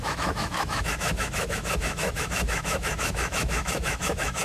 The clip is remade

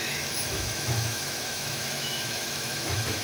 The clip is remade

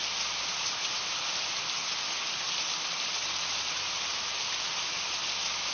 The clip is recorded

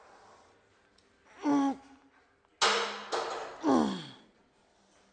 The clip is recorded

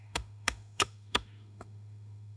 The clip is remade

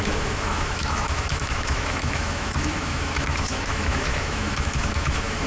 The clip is remade